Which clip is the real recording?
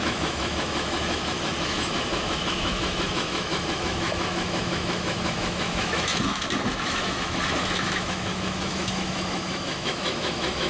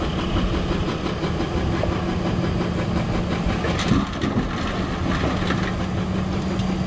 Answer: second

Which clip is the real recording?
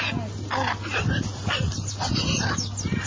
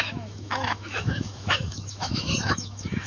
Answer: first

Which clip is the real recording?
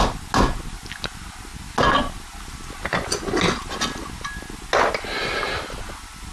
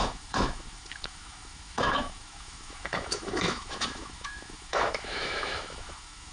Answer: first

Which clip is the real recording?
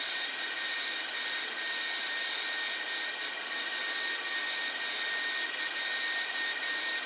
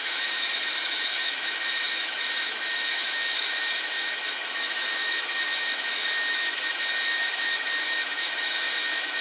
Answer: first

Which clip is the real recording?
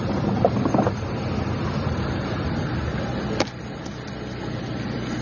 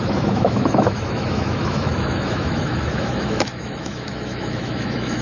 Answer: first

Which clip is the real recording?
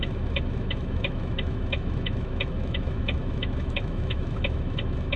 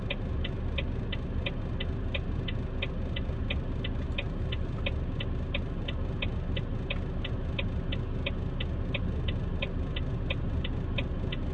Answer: second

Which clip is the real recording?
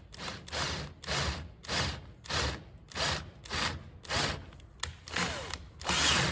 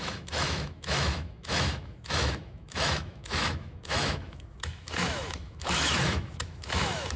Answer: first